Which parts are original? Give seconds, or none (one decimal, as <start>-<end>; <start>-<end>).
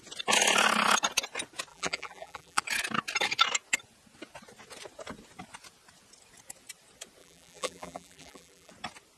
0.0-1.7; 2.6-7.2; 8.7-9.2